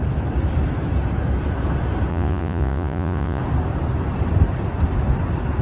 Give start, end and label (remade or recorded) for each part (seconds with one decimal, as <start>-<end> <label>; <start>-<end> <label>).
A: 0.0-2.1 recorded; 2.1-3.4 remade; 3.4-5.6 recorded